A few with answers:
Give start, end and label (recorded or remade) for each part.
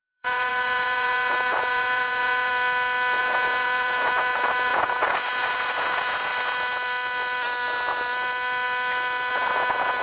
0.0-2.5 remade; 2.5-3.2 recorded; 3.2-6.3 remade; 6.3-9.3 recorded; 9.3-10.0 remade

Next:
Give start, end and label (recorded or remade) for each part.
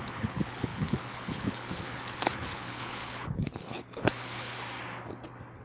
0.0-4.5 remade; 4.5-5.6 recorded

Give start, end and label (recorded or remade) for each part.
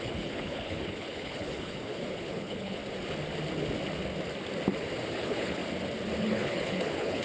0.0-2.8 remade; 2.8-5.1 recorded; 5.1-5.6 remade; 5.6-6.2 recorded; 6.2-7.2 remade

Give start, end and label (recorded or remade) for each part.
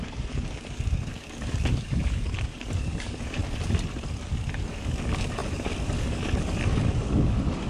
0.0-3.4 remade; 3.4-4.2 recorded; 4.2-7.7 remade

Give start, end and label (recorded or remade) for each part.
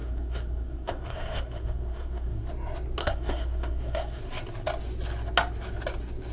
0.0-2.5 remade; 2.5-3.0 recorded; 3.0-4.2 remade; 4.2-6.3 recorded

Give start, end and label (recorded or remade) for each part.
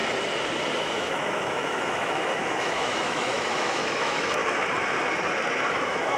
0.0-0.8 recorded; 0.8-4.4 remade; 4.4-5.7 recorded; 5.7-6.2 remade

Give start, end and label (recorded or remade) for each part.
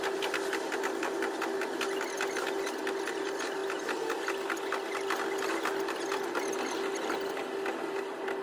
0.0-8.4 recorded